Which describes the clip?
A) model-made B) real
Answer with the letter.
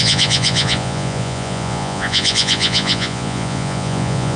A